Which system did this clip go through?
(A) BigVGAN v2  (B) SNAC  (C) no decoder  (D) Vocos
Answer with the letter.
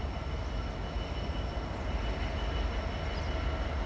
C